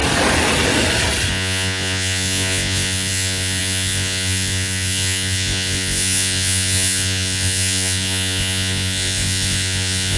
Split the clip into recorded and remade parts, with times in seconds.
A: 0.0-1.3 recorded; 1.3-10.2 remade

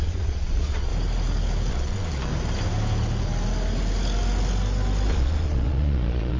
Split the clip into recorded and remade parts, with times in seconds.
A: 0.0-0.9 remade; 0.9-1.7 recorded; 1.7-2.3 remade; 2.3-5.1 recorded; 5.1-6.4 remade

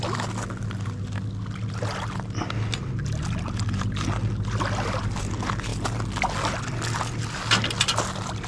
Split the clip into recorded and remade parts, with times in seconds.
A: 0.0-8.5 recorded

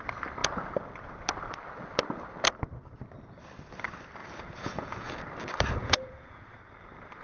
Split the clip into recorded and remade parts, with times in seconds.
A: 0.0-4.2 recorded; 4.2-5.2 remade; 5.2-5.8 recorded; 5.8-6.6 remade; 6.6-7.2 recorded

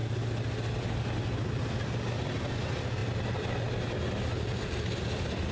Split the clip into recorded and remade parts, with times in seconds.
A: 0.0-5.5 recorded